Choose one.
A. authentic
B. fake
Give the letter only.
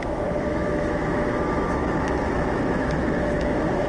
B